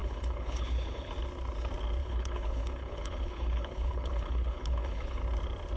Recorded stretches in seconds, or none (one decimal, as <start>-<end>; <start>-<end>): 1.1-2.0; 5.2-5.8